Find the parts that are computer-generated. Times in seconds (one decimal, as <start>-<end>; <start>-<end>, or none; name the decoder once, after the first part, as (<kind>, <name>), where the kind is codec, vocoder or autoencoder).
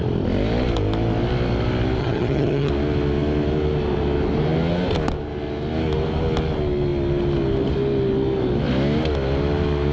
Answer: 2.0-2.7 (vocoder, HiFi-GAN)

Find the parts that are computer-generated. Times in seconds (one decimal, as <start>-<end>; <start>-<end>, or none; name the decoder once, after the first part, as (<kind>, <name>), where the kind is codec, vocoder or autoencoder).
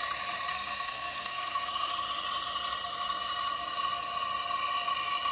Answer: 0.5-1.9 (codec, SNAC)